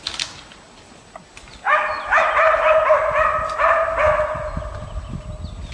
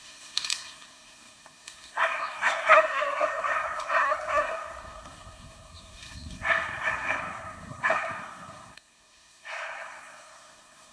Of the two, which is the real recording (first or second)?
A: first